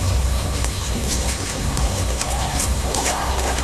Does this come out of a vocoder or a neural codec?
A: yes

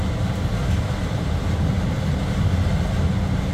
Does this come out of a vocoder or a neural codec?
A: no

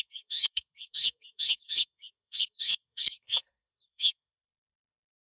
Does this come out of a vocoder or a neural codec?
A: yes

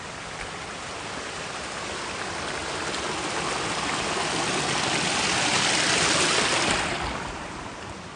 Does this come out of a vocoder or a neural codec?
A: no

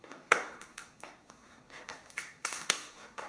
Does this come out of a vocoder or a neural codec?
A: yes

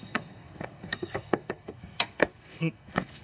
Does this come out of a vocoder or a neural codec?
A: yes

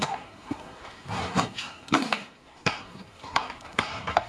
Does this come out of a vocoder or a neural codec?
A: yes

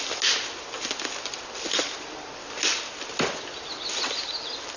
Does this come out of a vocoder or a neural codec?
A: no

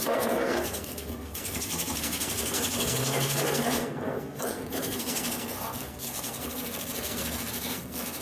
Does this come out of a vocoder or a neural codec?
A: yes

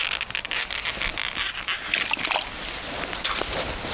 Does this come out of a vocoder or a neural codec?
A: no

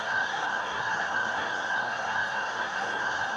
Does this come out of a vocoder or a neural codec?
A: yes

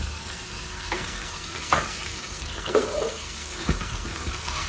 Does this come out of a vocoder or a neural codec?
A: yes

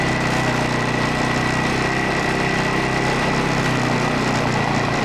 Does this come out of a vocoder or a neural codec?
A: no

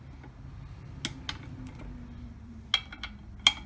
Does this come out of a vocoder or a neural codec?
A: no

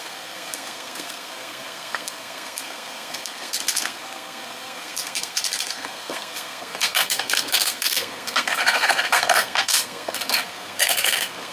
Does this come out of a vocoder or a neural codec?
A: yes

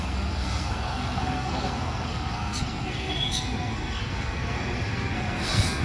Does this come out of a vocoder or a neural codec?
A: yes